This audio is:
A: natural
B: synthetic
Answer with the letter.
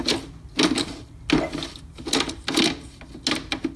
A